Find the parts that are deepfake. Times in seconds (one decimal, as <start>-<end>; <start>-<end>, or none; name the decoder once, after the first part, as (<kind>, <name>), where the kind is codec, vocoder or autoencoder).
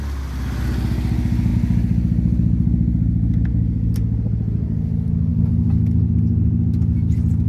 none